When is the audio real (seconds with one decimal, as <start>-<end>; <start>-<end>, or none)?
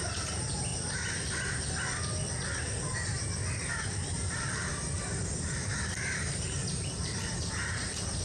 0.7-3.7